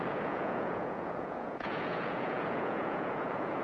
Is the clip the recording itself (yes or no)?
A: no